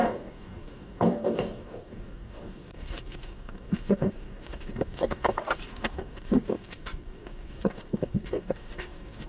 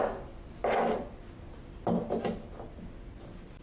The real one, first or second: second